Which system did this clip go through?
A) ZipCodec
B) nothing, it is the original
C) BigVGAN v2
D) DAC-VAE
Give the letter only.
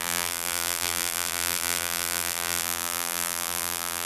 C